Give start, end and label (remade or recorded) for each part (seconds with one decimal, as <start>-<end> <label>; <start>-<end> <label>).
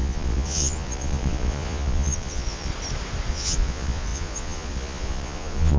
0.0-2.7 remade; 2.7-3.3 recorded; 3.3-5.8 remade